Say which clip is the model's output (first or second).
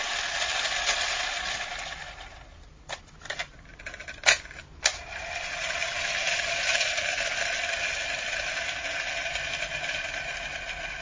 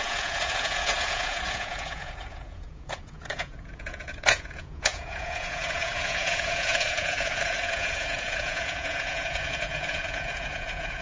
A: second